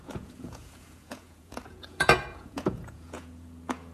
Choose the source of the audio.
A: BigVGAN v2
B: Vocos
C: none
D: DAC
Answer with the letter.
B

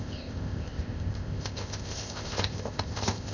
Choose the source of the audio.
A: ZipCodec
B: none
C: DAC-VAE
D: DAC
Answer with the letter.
A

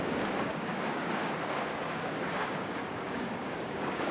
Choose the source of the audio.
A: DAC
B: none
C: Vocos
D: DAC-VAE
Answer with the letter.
A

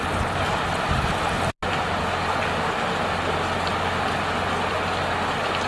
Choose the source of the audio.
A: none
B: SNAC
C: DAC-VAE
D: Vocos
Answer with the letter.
A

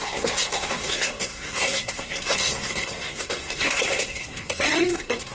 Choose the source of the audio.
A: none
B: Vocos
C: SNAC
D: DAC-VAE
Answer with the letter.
C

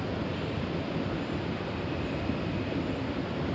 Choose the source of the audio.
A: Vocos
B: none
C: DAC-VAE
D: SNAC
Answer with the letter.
B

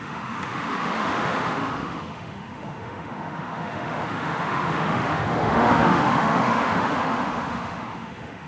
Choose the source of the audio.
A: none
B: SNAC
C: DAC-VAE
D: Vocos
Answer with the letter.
C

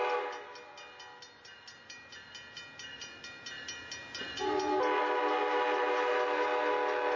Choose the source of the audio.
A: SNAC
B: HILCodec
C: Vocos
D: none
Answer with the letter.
D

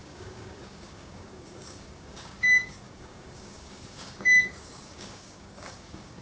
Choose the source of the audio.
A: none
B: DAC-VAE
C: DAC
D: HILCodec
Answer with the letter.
C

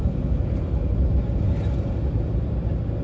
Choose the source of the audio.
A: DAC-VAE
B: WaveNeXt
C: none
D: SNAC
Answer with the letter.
C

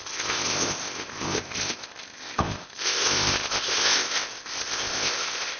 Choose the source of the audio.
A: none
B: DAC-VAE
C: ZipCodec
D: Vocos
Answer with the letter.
C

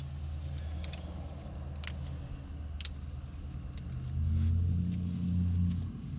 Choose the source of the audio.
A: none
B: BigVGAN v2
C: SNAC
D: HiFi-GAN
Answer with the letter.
A